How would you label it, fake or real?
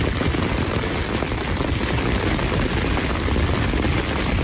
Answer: real